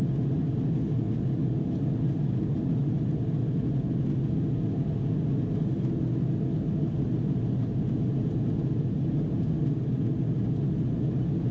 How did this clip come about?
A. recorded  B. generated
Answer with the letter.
A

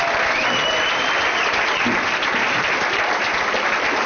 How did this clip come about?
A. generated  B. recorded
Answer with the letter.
B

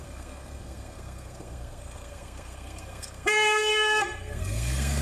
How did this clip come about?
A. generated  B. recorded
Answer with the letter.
A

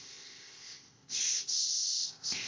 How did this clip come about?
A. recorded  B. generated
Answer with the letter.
B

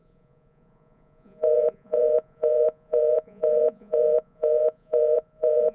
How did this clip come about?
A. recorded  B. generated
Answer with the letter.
B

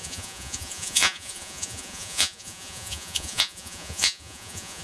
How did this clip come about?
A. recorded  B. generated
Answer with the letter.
B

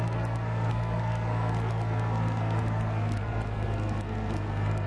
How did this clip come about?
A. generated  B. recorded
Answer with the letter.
A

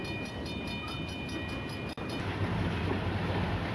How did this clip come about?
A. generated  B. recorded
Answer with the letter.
B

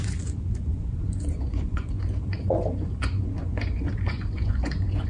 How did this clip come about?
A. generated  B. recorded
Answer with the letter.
A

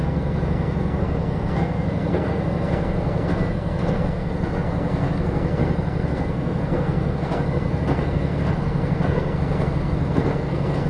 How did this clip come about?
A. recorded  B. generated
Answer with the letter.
B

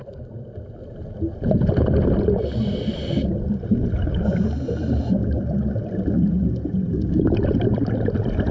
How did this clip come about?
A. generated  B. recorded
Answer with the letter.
B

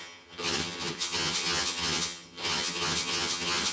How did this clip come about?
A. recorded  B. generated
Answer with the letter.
B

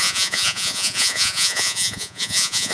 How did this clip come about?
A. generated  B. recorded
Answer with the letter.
A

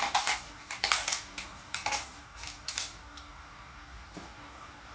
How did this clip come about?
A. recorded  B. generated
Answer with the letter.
B